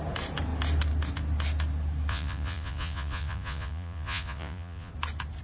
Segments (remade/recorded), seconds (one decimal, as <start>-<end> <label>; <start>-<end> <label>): 0.0-2.1 recorded; 2.1-4.9 remade; 4.9-5.4 recorded